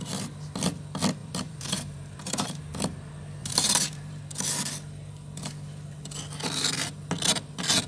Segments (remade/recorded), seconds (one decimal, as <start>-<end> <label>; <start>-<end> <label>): 0.0-1.2 recorded; 1.2-2.6 remade; 2.6-3.4 recorded; 3.4-4.2 remade; 4.2-7.9 recorded